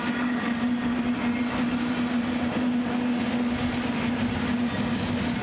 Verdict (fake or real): real